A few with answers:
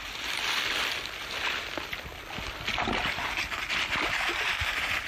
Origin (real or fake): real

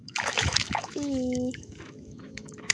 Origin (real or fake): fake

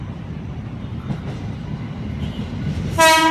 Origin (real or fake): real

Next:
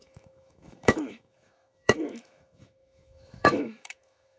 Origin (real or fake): fake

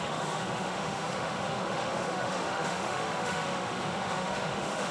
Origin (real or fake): fake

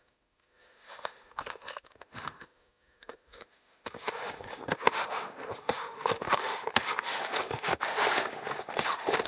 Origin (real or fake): fake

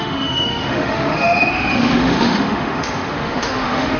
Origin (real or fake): fake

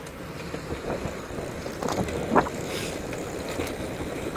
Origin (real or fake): real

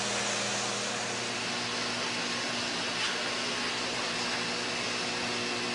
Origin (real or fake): real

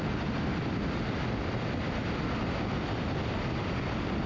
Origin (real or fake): real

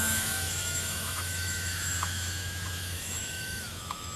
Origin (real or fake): fake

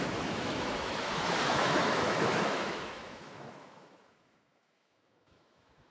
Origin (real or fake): fake